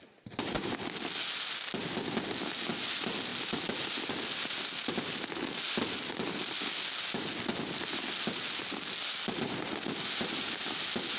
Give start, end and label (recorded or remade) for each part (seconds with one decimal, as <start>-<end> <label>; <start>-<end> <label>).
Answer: 0.0-11.2 recorded